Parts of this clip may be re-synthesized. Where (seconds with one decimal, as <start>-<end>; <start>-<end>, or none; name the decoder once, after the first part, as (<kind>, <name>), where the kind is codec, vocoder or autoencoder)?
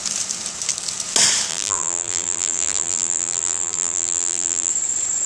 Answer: 1.5-4.7 (vocoder, BigVGAN v2)